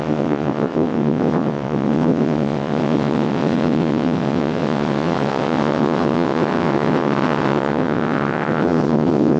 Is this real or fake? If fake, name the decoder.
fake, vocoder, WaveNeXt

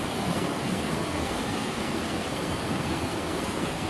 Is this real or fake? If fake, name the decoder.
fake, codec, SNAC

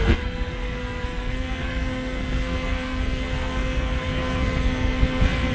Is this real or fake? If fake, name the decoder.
fake, codec, SNAC